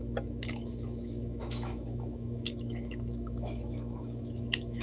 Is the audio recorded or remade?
remade